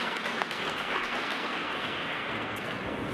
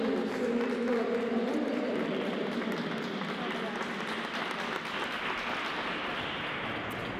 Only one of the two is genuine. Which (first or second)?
second